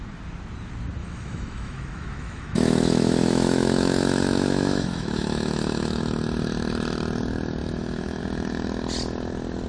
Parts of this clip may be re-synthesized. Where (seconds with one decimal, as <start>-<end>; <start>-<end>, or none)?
1.0-6.0; 7.6-8.2